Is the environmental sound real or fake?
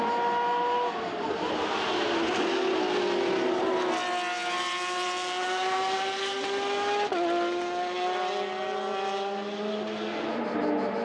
real